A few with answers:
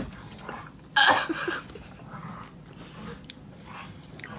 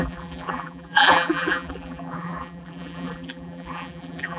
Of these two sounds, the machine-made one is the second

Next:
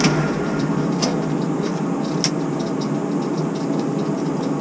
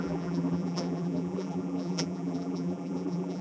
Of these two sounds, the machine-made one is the second